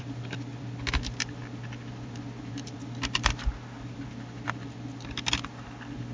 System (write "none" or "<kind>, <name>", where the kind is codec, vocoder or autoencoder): none